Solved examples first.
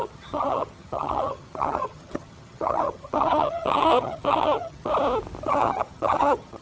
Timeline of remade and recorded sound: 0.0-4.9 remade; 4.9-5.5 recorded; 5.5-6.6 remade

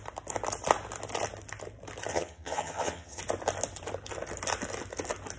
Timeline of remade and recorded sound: 0.0-2.1 recorded; 2.1-3.2 remade; 3.2-5.4 recorded